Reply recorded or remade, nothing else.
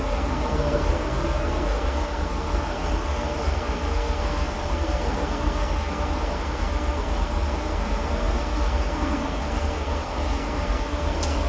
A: remade